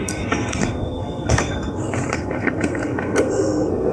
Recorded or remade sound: remade